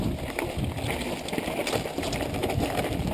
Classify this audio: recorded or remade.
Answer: recorded